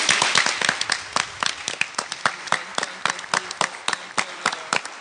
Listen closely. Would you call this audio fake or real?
real